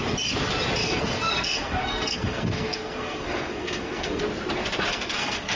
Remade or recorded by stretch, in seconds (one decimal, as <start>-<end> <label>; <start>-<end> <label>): 0.0-0.8 recorded; 0.8-4.2 remade; 4.2-4.9 recorded; 4.9-5.6 remade